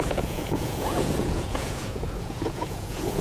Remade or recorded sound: remade